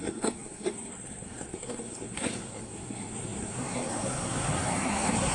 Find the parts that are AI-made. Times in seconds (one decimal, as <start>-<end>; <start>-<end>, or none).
0.0-5.3